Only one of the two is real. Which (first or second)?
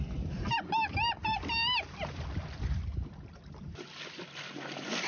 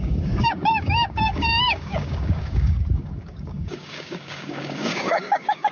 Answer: first